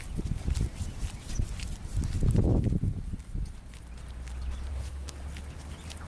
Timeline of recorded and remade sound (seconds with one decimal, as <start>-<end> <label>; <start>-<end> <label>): 0.0-4.7 recorded; 4.7-5.2 remade; 5.2-6.1 recorded

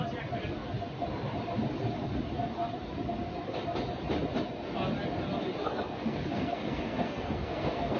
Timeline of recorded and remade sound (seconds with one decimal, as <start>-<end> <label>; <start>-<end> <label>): 0.0-5.6 recorded; 5.6-8.0 remade

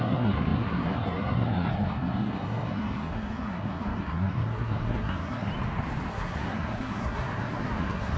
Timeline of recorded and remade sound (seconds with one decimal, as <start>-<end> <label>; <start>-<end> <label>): 0.0-5.5 remade; 5.5-6.1 recorded; 6.1-8.2 remade

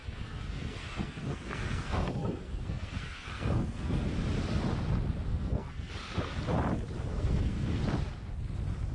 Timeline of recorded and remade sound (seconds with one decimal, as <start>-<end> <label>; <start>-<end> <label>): 0.0-4.1 remade; 4.1-5.3 recorded; 5.3-5.9 remade; 5.9-7.1 recorded; 7.1-7.8 remade; 7.8-8.9 recorded